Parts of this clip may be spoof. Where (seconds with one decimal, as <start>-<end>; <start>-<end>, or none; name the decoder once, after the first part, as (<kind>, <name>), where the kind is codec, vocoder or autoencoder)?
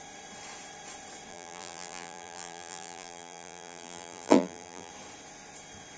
1.3-4.9 (vocoder, BigVGAN v2)